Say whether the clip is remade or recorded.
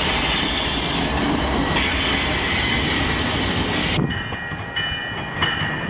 recorded